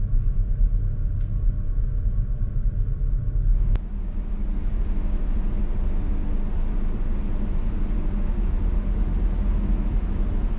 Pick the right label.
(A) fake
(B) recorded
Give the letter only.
B